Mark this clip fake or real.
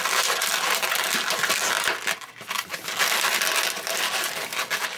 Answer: real